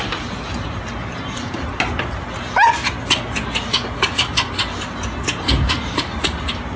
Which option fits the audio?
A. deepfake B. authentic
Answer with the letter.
B